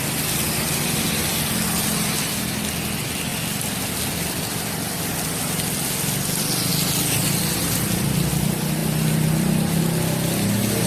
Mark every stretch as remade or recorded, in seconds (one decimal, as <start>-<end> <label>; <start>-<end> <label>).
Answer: 0.0-10.9 recorded

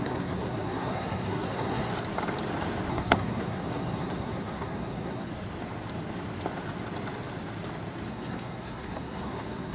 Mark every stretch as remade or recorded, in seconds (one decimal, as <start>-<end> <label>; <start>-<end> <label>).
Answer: 0.0-1.9 remade; 1.9-2.9 recorded; 2.9-5.3 remade; 5.3-8.1 recorded; 8.1-9.7 remade